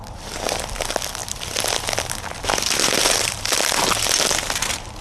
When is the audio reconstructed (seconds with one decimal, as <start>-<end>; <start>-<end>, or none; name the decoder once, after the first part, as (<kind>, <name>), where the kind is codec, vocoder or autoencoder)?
1.2-3.4 (vocoder, BigVGAN v2)